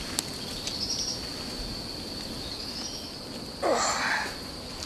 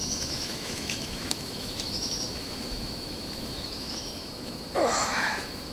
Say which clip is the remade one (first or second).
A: second